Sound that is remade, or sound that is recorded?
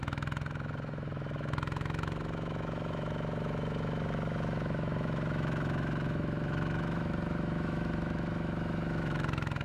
remade